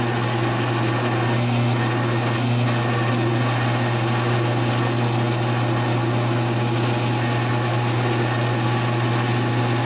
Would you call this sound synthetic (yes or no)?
no